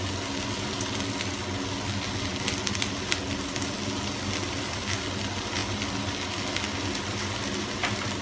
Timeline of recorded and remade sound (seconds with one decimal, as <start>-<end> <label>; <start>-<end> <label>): 0.0-8.2 recorded